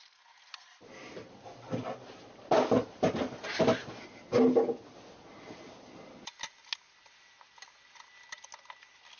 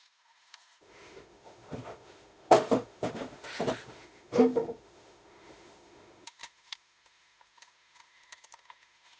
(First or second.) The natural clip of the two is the first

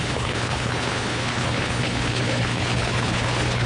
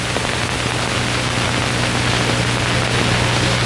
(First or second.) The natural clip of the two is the second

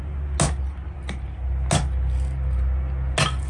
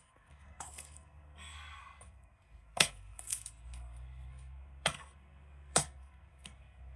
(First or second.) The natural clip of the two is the first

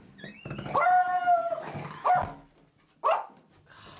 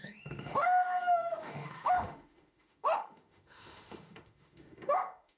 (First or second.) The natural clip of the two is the first